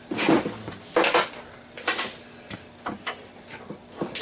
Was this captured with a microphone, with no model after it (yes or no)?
yes